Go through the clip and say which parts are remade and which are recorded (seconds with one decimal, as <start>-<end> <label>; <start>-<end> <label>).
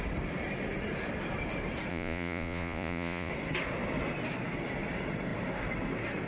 0.0-1.9 recorded; 1.9-3.3 remade; 3.3-6.3 recorded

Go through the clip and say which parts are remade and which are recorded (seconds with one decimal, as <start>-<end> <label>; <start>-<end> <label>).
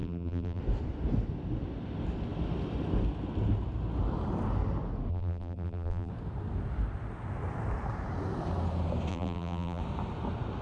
0.0-0.6 remade; 0.6-5.1 recorded; 5.1-6.1 remade; 6.1-9.1 recorded; 9.1-9.8 remade; 9.8-10.6 recorded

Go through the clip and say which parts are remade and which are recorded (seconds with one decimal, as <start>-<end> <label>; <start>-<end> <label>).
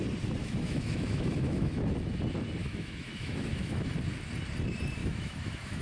0.0-0.4 recorded; 0.4-1.8 remade; 1.8-2.6 recorded; 2.6-3.9 remade; 3.9-5.0 recorded; 5.0-5.8 remade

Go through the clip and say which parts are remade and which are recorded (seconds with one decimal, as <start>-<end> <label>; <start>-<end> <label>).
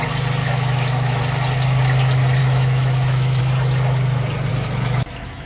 0.0-0.4 recorded; 0.4-1.2 remade; 1.2-2.4 recorded; 2.4-3.4 remade; 3.4-4.5 recorded; 4.5-5.5 remade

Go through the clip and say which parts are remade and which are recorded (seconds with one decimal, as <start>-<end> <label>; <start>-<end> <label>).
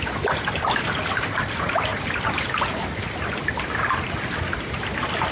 0.0-5.3 recorded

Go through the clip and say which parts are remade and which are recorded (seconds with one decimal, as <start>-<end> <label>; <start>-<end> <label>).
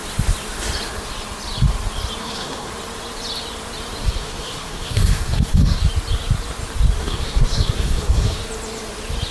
0.0-2.2 recorded; 2.2-2.7 remade; 2.7-4.0 recorded; 4.0-5.8 remade; 5.8-7.0 recorded; 7.0-8.4 remade; 8.4-9.3 recorded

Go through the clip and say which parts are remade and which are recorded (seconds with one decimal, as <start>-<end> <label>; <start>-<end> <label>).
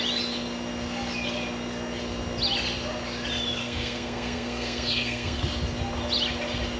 0.0-3.6 recorded; 3.6-5.4 remade; 5.4-6.8 recorded